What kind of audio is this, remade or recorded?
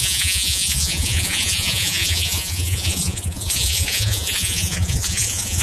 remade